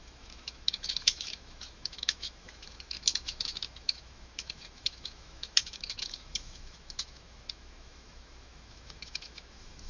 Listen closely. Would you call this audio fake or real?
fake